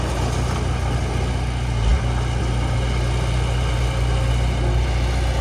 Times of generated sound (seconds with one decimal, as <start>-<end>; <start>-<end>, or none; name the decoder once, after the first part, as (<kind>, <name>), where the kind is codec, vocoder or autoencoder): none